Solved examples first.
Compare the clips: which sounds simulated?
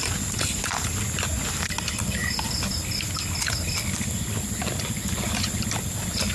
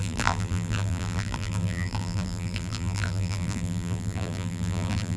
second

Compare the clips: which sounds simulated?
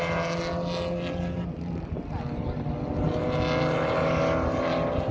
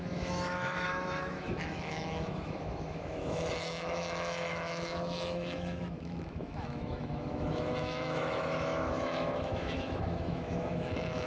second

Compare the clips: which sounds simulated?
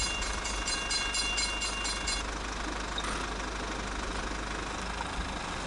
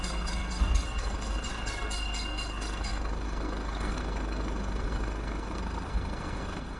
second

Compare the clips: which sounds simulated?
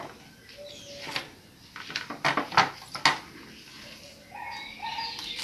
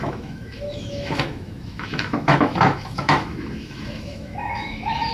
second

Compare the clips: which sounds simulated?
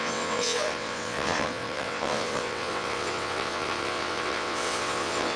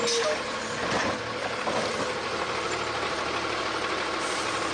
first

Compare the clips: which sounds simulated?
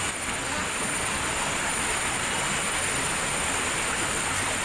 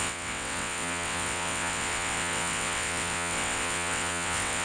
second